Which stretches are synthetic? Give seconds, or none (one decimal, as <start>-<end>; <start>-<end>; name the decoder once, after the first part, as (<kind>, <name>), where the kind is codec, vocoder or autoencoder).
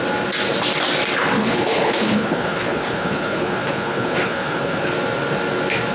1.4-4.9 (codec, HILCodec)